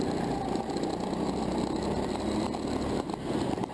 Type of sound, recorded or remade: recorded